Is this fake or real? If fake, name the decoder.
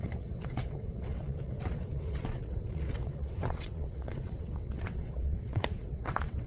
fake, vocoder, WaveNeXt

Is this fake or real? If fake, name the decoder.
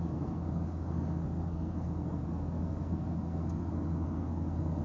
fake, codec, SNAC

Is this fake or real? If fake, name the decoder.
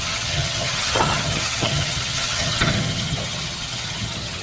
fake, vocoder, HiFi-GAN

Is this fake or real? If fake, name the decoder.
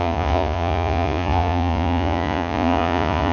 fake, vocoder, Vocos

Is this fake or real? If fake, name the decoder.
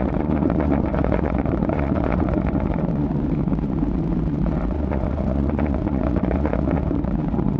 fake, vocoder, Vocos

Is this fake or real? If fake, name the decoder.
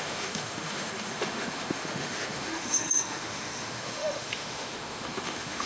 fake, autoencoder, DAC-VAE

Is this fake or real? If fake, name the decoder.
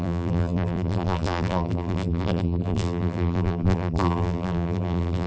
fake, vocoder, BigVGAN v2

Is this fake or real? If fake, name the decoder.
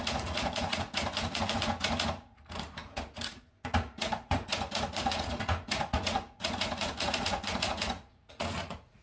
fake, vocoder, Vocos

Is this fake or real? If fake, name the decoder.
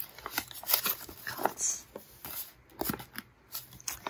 real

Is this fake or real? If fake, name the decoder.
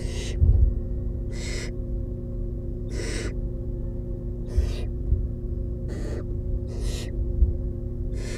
fake, vocoder, Vocos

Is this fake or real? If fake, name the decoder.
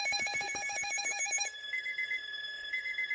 fake, codec, DAC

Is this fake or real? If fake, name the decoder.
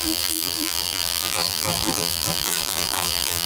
fake, vocoder, BigVGAN v2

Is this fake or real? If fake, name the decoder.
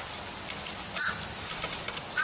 real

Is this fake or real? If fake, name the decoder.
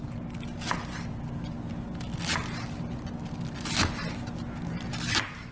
real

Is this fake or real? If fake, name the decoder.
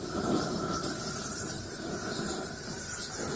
real